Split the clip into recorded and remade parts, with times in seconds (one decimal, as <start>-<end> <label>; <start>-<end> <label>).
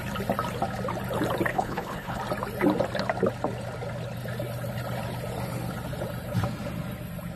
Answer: 0.0-1.5 recorded; 1.5-2.2 remade; 2.2-7.4 recorded